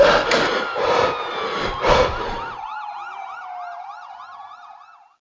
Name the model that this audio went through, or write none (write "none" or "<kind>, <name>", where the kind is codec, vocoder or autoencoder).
none